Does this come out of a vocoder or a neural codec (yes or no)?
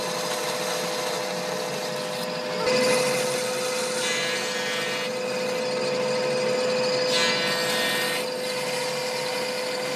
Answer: no